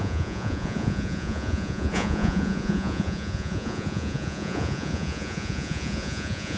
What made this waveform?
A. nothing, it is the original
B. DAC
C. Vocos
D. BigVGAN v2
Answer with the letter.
C